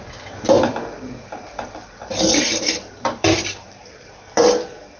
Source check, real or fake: fake